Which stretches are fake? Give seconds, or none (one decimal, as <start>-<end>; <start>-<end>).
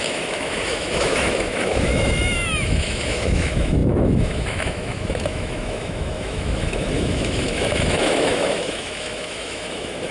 0.0-10.1